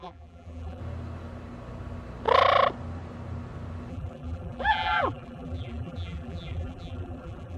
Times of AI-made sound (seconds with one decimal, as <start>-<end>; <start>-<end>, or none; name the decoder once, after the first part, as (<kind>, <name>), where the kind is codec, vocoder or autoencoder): 0.0-0.8 (vocoder, BigVGAN v2); 3.9-7.6